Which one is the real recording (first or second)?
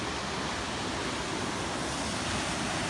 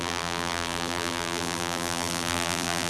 first